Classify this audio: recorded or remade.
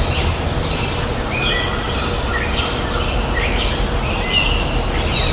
recorded